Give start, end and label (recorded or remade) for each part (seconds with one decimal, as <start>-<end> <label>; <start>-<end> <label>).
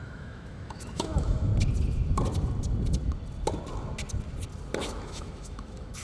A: 0.0-1.5 remade; 1.5-4.8 recorded; 4.8-6.0 remade